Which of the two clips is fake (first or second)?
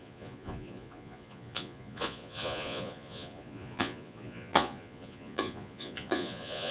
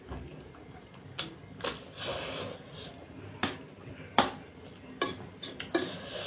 first